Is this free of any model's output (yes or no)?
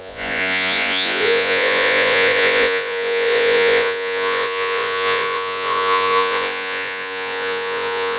no